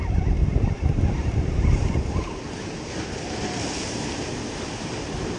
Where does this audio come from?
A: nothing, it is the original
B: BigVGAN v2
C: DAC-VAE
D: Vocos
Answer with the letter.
A